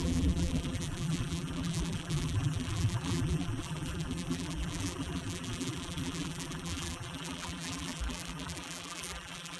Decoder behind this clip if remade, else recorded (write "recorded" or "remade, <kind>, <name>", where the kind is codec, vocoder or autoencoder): remade, vocoder, BigVGAN v2